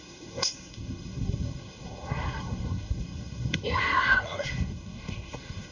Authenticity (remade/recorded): remade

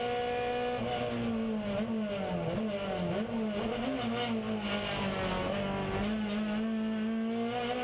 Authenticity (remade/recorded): recorded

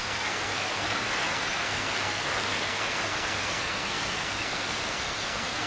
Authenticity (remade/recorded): remade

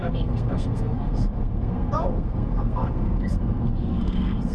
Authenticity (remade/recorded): remade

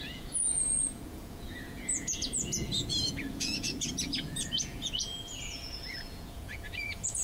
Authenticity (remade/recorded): remade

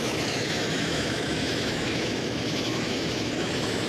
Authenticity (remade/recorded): remade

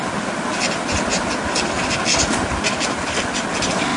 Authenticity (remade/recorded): recorded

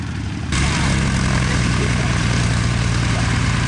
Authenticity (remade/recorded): remade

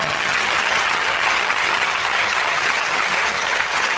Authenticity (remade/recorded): remade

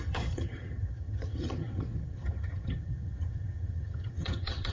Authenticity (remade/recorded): remade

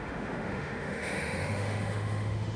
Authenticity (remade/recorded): remade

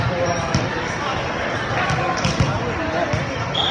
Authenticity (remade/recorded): recorded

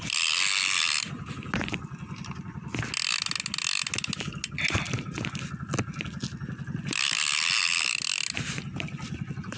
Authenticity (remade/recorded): recorded